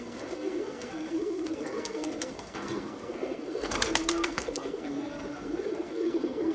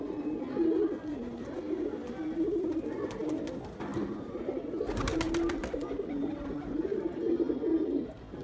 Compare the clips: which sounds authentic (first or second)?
second